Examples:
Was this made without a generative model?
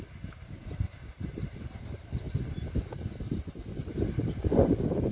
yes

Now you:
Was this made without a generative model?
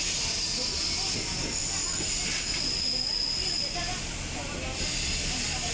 yes